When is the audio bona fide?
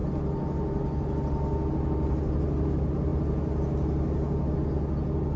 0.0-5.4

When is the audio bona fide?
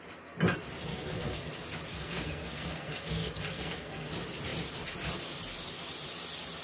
0.0-0.9; 1.5-1.9; 4.1-6.6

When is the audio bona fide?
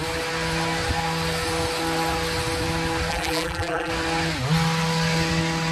0.0-3.1; 3.9-5.7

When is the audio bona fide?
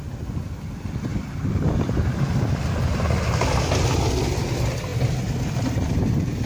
0.0-6.5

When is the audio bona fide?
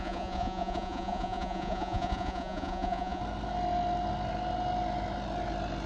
3.2-5.9